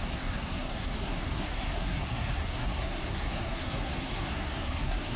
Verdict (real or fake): fake